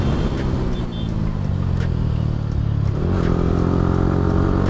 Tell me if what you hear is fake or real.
real